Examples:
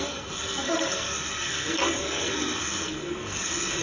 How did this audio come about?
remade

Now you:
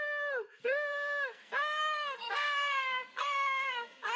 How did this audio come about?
remade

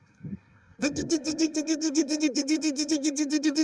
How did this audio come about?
remade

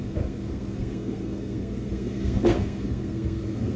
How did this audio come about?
remade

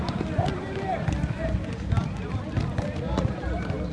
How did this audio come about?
recorded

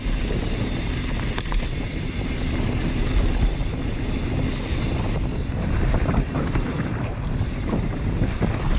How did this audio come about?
recorded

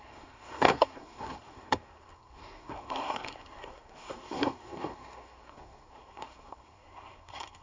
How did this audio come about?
remade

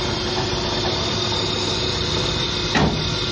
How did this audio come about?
recorded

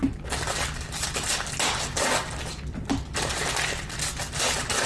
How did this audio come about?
recorded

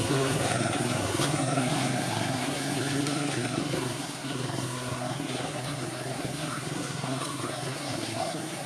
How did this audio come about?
remade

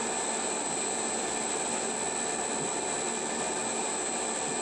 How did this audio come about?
recorded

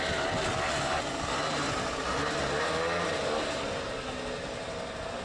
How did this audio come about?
recorded